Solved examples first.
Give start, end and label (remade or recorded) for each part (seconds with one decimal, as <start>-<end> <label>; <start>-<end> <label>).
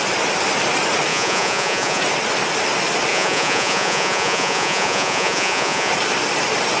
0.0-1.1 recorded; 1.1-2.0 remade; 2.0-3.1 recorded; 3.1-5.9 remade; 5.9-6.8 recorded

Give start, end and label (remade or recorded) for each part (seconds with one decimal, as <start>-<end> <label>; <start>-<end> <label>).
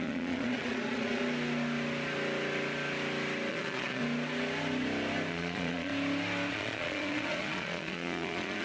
0.0-1.2 remade; 1.2-3.5 recorded; 3.5-4.0 remade; 4.0-5.3 recorded; 5.3-5.9 remade; 5.9-6.5 recorded; 6.5-8.6 remade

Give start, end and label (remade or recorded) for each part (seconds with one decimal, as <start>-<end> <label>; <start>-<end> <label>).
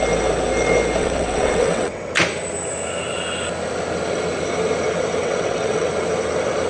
0.0-1.0 recorded; 1.0-2.1 remade; 2.1-5.2 recorded; 5.2-5.9 remade; 5.9-6.7 recorded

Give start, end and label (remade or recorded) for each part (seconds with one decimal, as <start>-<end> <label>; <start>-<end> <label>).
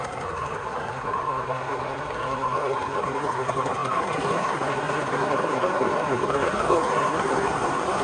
0.0-8.0 remade